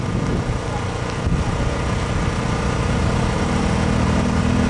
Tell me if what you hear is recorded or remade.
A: recorded